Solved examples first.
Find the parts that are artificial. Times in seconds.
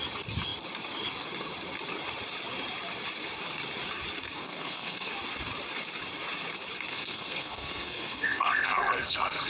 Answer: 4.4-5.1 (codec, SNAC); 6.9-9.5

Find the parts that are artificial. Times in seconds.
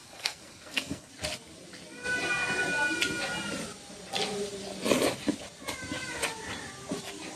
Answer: 0.0-1.1 (codec, SNAC)